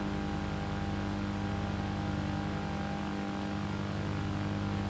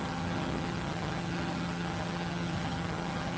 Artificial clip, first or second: second